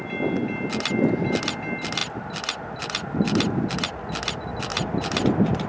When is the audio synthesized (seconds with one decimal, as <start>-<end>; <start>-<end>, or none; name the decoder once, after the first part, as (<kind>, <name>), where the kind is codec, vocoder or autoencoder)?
4.7-5.7 (vocoder, BigVGAN v2)